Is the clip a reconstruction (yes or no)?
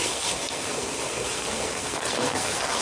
yes